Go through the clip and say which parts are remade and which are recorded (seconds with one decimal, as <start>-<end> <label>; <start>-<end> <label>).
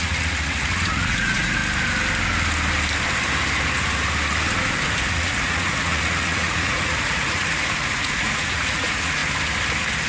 0.0-1.6 remade; 1.6-5.1 recorded; 5.1-9.2 remade; 9.2-10.1 recorded